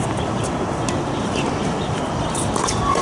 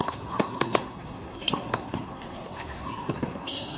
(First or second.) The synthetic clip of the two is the second